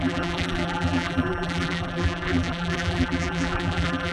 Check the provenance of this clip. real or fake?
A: fake